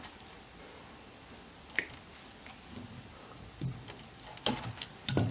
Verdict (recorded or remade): recorded